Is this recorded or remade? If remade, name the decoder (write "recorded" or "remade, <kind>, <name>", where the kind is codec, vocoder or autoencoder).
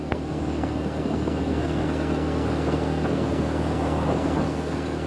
remade, codec, SNAC